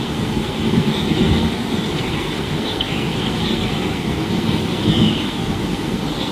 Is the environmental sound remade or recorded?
remade